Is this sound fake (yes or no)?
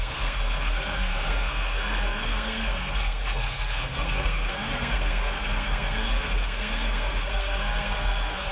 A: yes